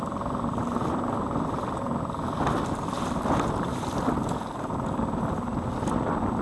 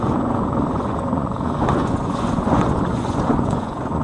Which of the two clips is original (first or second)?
first